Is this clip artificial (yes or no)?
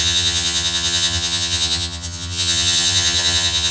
yes